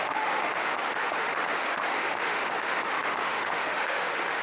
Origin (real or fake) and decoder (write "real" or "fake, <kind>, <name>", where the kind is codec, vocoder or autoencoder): fake, autoencoder, DAC-VAE